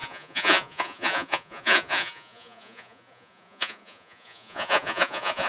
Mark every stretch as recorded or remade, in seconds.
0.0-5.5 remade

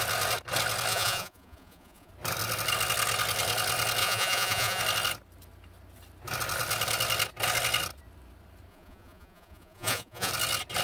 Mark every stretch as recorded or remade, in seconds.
0.0-0.9 recorded; 0.9-2.1 remade; 2.1-4.0 recorded; 4.0-4.8 remade; 4.8-8.7 recorded; 8.7-10.3 remade; 10.3-10.8 recorded

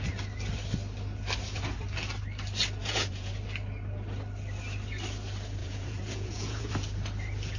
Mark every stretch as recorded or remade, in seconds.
0.0-2.8 recorded; 2.8-3.3 remade; 3.3-5.6 recorded; 5.6-6.7 remade; 6.7-7.6 recorded

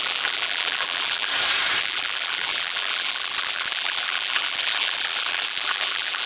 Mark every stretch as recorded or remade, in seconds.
0.0-1.3 remade; 1.3-1.8 recorded; 1.8-6.3 remade

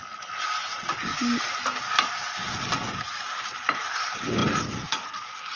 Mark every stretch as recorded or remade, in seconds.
0.0-1.1 recorded; 1.1-3.0 remade; 3.0-4.4 recorded; 4.4-5.6 remade

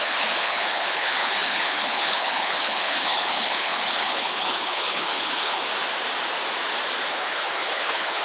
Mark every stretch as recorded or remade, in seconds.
0.0-5.6 remade; 5.6-7.1 recorded; 7.1-8.2 remade

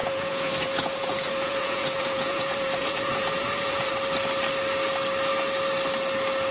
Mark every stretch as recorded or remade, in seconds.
0.0-3.9 remade; 3.9-6.5 recorded